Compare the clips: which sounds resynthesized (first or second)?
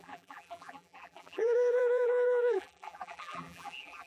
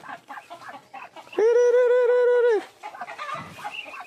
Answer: first